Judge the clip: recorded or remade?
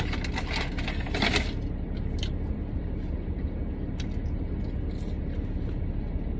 recorded